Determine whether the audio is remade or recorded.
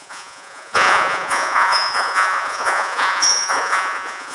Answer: remade